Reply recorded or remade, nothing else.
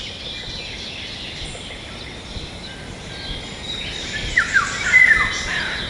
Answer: recorded